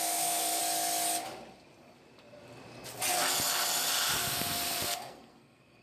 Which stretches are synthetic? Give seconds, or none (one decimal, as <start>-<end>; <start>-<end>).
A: 0.0-0.6; 4.1-5.8